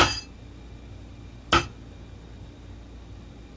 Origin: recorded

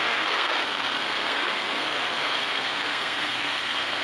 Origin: remade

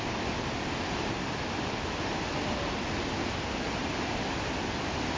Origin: recorded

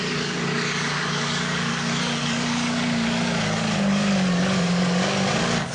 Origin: remade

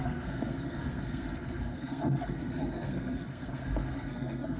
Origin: remade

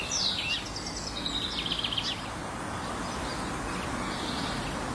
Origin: recorded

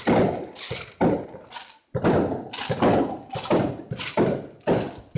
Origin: recorded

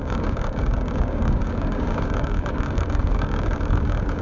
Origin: remade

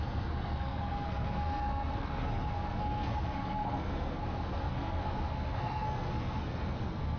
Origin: remade